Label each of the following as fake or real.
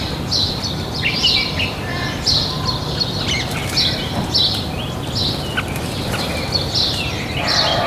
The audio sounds real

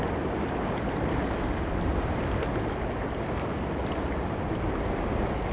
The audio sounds real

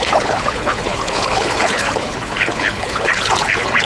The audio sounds fake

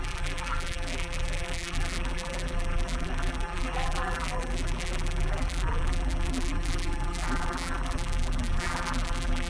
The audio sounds fake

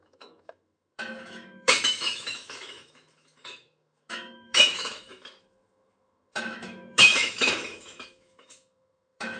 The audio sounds fake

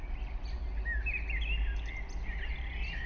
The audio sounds real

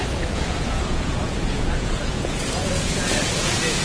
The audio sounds fake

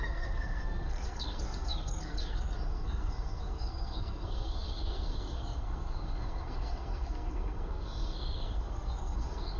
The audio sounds fake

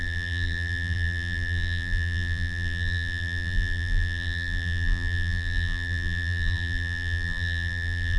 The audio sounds fake